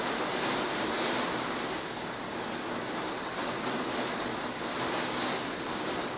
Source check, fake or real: real